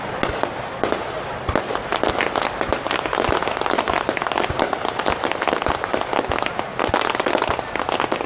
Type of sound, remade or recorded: recorded